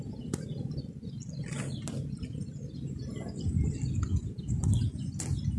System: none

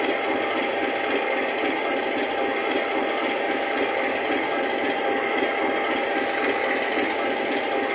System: none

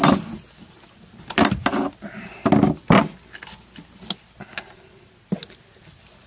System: none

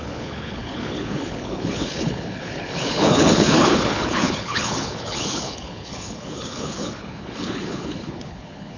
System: codec, HILCodec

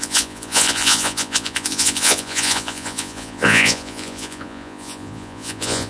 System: vocoder, Vocos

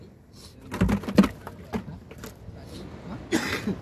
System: none